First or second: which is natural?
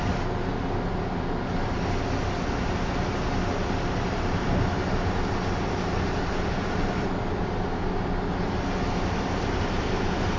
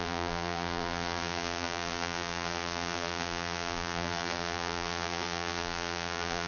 first